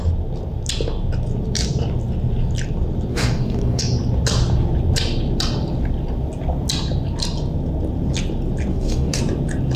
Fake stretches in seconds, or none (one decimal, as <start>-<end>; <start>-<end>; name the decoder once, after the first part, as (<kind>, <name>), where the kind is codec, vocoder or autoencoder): 3.1-3.8 (codec, DAC); 8.7-9.2